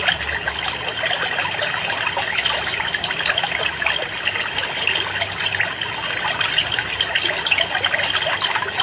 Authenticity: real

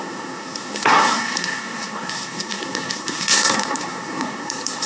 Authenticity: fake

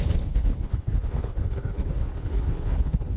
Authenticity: fake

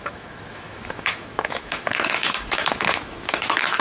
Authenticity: fake